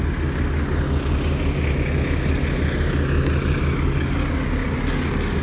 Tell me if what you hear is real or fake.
real